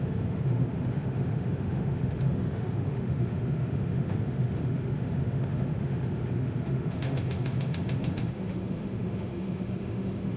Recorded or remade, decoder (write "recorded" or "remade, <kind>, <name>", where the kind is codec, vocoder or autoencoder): remade, autoencoder, DAC-VAE